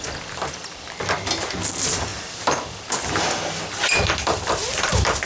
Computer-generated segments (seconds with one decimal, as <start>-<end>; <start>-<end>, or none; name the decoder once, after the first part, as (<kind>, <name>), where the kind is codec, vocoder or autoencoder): none